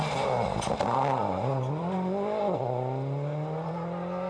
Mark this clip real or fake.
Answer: real